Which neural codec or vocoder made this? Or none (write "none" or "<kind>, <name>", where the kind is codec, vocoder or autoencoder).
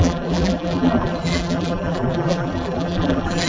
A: vocoder, BigVGAN v2